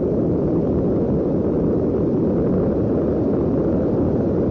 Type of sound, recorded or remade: recorded